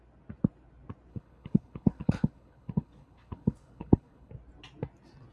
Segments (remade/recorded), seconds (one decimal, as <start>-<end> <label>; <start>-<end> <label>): 0.0-1.1 recorded; 1.1-4.3 remade; 4.3-5.3 recorded